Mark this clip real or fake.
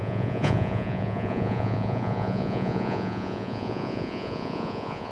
fake